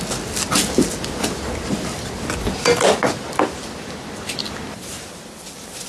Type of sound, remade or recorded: recorded